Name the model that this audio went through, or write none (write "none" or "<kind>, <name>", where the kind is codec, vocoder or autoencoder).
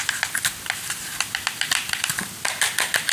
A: vocoder, BigVGAN v2